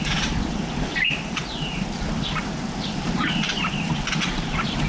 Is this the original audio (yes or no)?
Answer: no